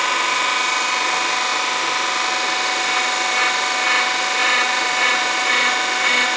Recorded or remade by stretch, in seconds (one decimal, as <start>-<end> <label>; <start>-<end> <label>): 0.0-4.4 recorded; 4.4-5.5 remade; 5.5-6.4 recorded